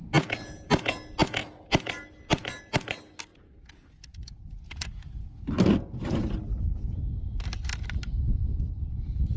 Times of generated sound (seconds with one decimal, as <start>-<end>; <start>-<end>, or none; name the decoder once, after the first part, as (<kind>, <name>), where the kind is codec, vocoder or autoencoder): 3.3-5.4 (vocoder, Vocos)